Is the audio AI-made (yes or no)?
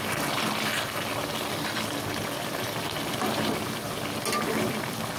no